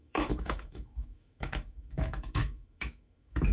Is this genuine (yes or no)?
no